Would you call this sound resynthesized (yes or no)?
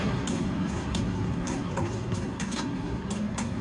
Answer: yes